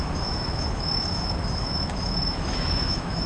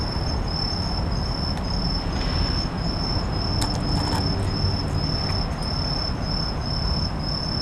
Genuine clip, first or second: second